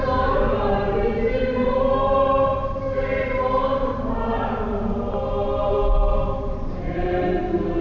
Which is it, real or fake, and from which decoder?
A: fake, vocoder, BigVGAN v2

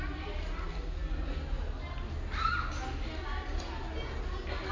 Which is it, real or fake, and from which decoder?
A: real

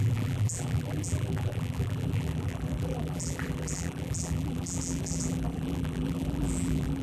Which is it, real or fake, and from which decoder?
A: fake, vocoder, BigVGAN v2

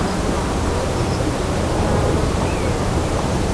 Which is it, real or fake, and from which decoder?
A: fake, vocoder, BigVGAN v2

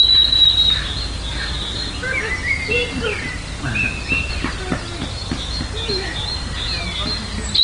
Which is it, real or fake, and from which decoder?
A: real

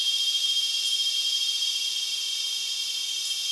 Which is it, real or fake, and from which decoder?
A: fake, vocoder, BigVGAN v2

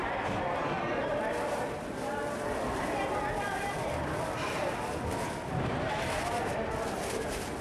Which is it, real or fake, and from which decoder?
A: real